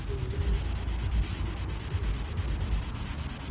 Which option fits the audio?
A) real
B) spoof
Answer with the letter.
A